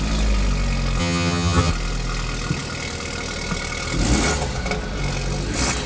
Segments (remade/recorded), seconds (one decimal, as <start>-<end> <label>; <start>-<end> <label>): 0.0-1.0 recorded; 1.0-1.7 remade; 1.7-5.9 recorded